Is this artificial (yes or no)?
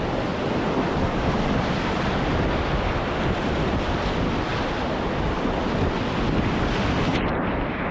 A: no